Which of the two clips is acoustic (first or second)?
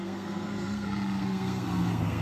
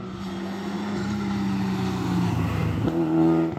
second